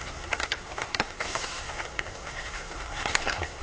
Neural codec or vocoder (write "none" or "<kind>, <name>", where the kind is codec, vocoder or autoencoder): codec, SNAC